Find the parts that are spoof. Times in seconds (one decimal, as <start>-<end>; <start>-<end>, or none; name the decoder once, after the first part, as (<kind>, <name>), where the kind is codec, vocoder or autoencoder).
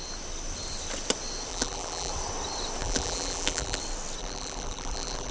1.5-2.1 (vocoder, BigVGAN v2); 2.8-3.8; 4.2-5.3